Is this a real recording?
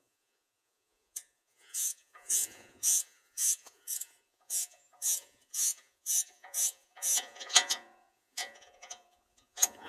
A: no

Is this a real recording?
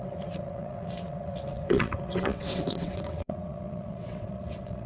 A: no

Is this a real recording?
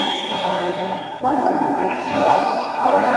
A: no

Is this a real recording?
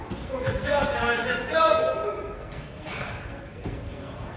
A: no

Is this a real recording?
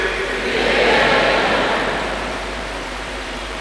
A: no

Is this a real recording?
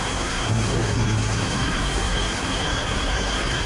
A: no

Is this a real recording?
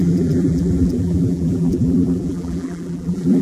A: no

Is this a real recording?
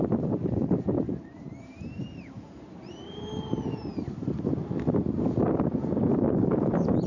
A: no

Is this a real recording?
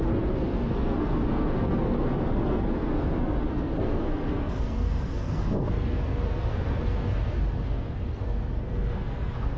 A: no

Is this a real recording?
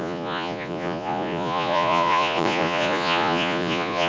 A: no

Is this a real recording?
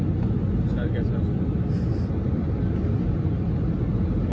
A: yes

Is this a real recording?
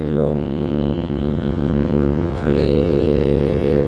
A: no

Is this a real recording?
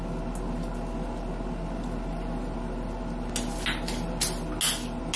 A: yes